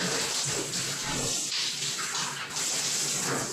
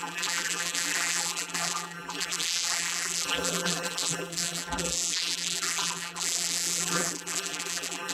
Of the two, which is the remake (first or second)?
second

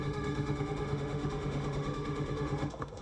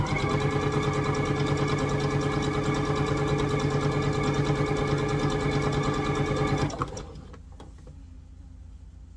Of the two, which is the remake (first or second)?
first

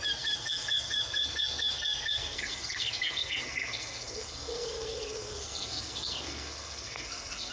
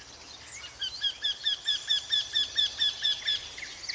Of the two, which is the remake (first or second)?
first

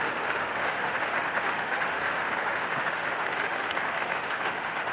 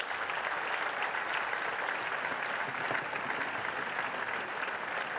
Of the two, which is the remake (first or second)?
first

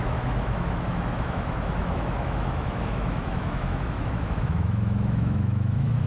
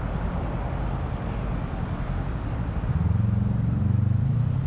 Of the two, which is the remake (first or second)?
first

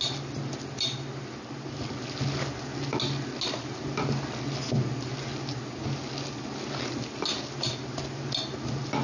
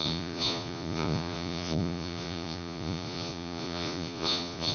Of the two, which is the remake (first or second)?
second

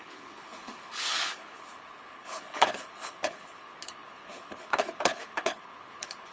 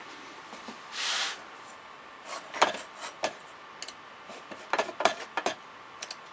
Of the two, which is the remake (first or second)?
first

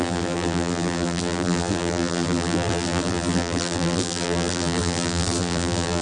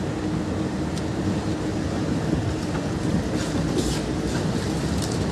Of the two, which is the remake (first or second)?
first